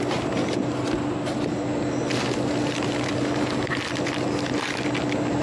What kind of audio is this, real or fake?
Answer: real